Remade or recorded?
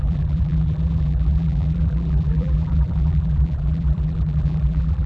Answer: remade